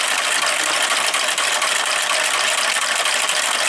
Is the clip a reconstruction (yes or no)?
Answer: no